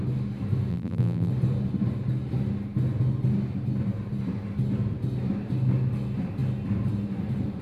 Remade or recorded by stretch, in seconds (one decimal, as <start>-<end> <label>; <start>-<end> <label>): 0.0-0.7 recorded; 0.7-1.3 remade; 1.3-7.6 recorded